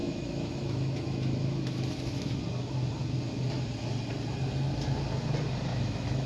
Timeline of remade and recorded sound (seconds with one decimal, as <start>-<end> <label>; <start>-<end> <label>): 0.0-2.3 remade; 2.3-5.7 recorded; 5.7-6.3 remade